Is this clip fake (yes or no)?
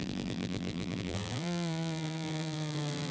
yes